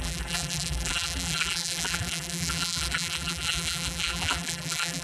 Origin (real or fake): fake